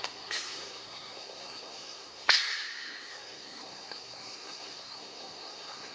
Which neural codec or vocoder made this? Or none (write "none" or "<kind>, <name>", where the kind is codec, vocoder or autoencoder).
codec, SNAC